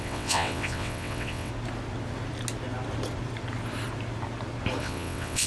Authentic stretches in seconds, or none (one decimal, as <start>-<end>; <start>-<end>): 1.5-4.8